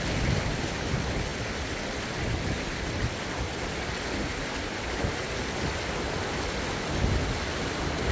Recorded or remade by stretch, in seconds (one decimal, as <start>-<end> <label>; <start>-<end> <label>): 0.0-8.1 recorded